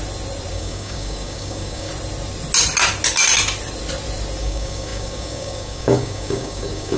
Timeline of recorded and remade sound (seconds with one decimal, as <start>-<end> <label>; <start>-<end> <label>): 0.0-0.5 recorded; 0.5-1.9 remade; 1.9-4.4 recorded; 4.4-7.0 remade